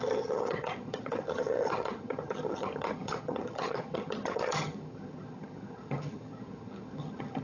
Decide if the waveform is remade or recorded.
remade